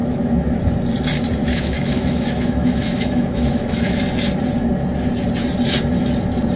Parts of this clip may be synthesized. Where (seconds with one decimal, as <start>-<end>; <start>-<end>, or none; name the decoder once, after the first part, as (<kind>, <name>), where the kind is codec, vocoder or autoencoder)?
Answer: 0.0-0.6 (autoencoder, DAC-VAE); 1.4-4.0